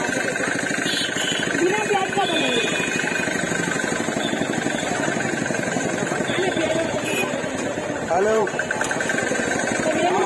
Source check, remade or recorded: remade